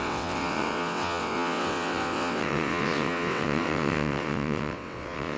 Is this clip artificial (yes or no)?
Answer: yes